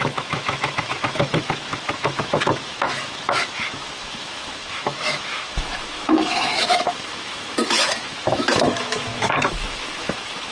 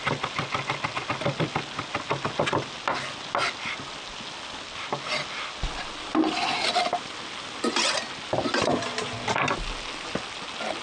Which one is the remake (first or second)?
first